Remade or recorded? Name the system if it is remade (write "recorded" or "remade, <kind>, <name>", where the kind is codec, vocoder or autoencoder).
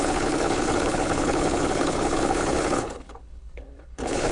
remade, codec, HILCodec